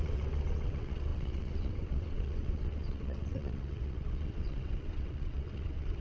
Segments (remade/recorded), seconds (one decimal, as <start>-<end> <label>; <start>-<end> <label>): 0.0-6.0 remade

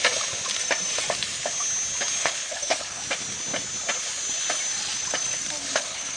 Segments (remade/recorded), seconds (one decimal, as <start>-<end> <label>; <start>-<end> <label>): 0.0-2.2 recorded; 2.2-3.0 remade; 3.0-5.6 recorded; 5.6-6.2 remade

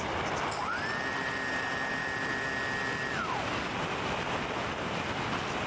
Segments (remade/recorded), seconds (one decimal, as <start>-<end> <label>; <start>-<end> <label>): 0.0-5.7 recorded

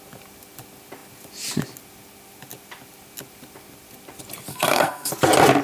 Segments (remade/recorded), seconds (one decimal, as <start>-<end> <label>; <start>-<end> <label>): 0.0-4.5 recorded; 4.5-5.1 remade; 5.1-5.6 recorded

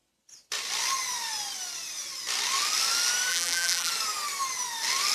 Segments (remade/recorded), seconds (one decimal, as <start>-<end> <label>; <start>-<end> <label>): 0.0-3.3 recorded; 3.3-3.9 remade; 3.9-5.1 recorded